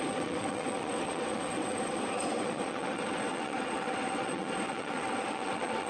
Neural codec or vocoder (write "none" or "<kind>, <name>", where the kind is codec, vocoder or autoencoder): vocoder, WaveNeXt